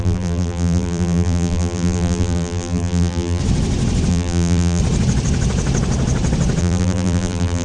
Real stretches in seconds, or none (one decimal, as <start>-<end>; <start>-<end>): 3.4-4.1; 4.8-6.6